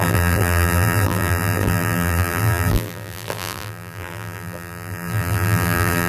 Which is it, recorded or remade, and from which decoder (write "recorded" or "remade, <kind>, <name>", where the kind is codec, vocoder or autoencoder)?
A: remade, vocoder, BigVGAN v2